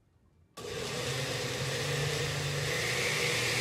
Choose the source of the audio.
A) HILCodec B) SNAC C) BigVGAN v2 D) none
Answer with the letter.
D